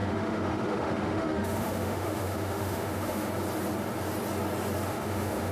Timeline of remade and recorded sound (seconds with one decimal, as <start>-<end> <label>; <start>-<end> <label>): 0.0-3.3 remade; 3.3-4.9 recorded; 4.9-5.5 remade